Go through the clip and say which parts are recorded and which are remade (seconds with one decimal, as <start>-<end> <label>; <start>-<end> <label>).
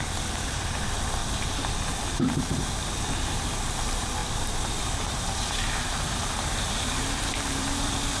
0.0-1.2 remade; 1.2-2.1 recorded; 2.1-2.5 remade; 2.5-3.2 recorded; 3.2-4.2 remade; 4.2-4.9 recorded; 4.9-8.2 remade